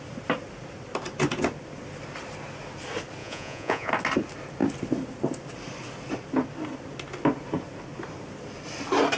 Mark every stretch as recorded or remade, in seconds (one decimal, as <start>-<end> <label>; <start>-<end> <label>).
0.0-3.2 recorded; 3.2-3.9 remade; 3.9-9.2 recorded